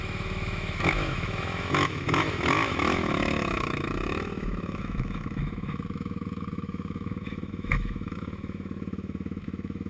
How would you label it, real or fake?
fake